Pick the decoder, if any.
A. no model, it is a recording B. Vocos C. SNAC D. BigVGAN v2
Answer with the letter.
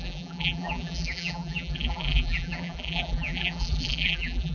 D